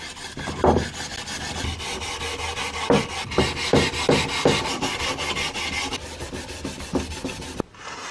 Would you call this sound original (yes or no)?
yes